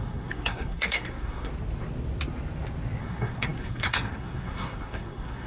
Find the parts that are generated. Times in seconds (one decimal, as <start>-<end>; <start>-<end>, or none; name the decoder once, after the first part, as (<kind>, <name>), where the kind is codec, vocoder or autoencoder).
0.0-1.5 (codec, SNAC); 3.0-5.5